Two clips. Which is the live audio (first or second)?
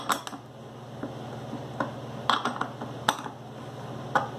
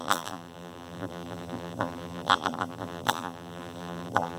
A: first